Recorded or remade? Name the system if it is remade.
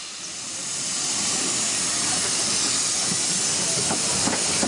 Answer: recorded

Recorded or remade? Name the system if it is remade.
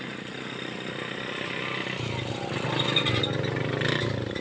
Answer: recorded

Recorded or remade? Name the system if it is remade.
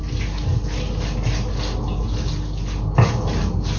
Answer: recorded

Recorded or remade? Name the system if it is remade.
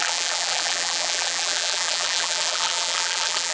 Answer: remade, vocoder, BigVGAN v2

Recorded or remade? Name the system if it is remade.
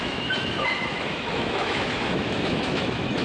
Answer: remade, autoencoder, DAC-VAE